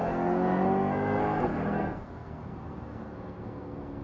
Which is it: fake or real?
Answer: fake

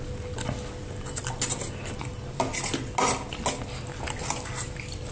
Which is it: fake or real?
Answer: real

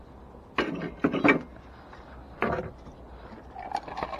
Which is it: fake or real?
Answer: real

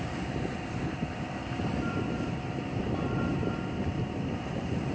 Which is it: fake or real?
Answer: fake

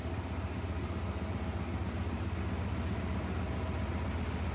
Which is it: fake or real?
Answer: real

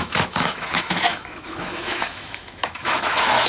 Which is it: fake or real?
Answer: fake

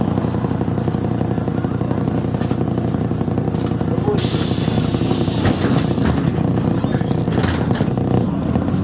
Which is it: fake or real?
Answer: real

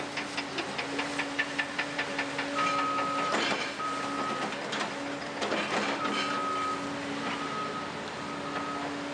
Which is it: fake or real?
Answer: real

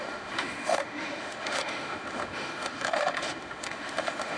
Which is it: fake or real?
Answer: fake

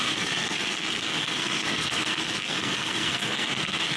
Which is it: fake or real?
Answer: fake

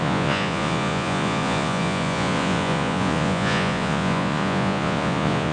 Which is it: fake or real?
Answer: fake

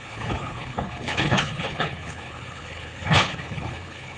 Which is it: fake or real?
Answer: fake